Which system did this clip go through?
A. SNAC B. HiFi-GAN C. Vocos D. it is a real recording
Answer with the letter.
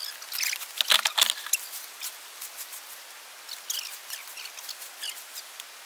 D